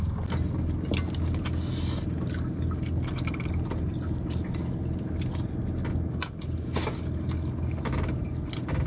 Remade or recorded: recorded